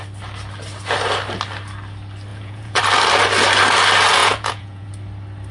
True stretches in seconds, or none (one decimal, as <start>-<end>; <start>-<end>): 0.0-2.3; 2.8-4.2; 4.9-5.5